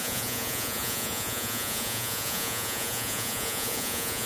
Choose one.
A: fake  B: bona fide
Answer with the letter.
A